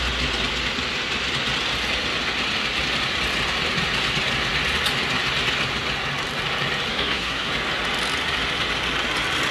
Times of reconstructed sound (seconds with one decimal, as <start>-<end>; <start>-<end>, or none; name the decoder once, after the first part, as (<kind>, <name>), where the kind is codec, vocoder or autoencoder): 6.9-7.5 (codec, SNAC)